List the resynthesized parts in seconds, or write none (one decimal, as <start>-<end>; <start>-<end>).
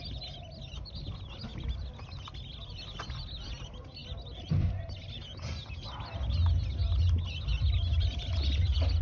none